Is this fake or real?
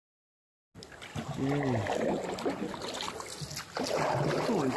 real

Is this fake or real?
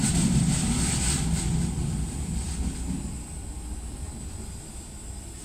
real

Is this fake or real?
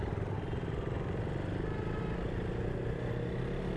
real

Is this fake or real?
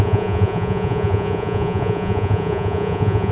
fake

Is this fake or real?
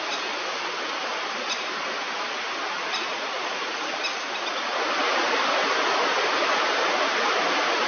real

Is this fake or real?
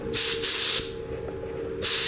real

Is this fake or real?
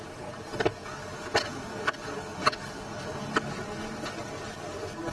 real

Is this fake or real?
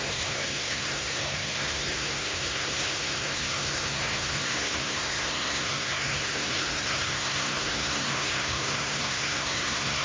fake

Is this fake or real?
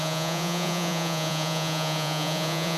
fake